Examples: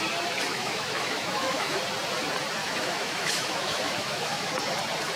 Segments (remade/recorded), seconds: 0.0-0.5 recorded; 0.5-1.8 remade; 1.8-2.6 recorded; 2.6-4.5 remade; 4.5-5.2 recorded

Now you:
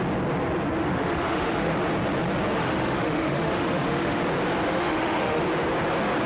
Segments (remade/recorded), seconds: 0.0-0.8 recorded; 0.8-1.7 remade; 1.7-2.6 recorded; 2.6-4.2 remade; 4.2-4.7 recorded; 4.7-5.4 remade; 5.4-6.3 recorded

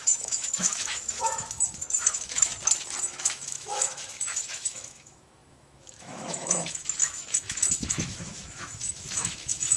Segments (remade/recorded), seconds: 0.0-2.5 remade; 2.5-3.0 recorded; 3.0-9.8 remade

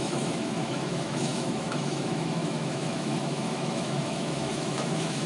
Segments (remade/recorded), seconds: 0.0-5.3 remade

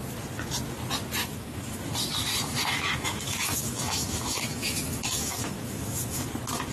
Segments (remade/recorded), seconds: 0.0-1.2 recorded; 1.2-1.8 remade; 1.8-2.5 recorded; 2.5-6.2 remade; 6.2-6.7 recorded

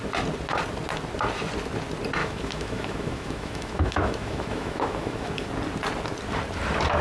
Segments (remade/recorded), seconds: 0.0-2.2 recorded; 2.2-5.5 remade; 5.5-7.0 recorded

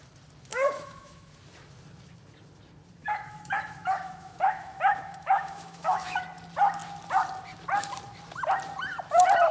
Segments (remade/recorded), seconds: 0.0-0.5 recorded; 0.5-1.3 remade; 1.3-3.0 recorded; 3.0-6.2 remade; 6.2-9.5 recorded

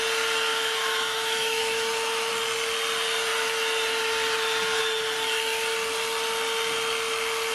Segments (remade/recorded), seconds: 0.0-0.5 recorded; 0.5-2.3 remade; 2.3-7.5 recorded